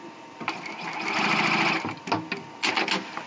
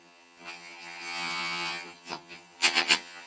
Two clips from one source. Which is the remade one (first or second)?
second